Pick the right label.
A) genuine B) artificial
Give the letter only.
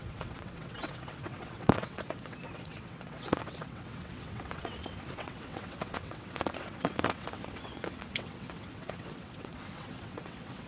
B